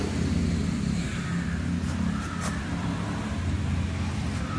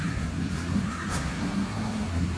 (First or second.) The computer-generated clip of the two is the second